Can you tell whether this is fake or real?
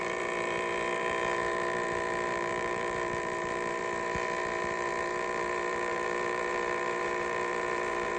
fake